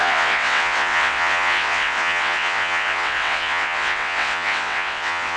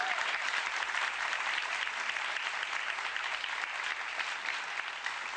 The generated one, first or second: first